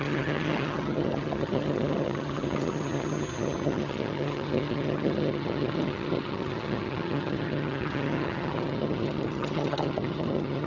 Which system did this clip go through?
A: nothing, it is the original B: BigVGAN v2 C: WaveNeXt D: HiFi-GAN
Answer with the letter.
D